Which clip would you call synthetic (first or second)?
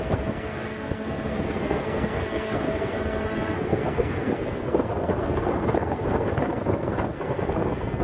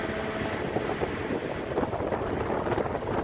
first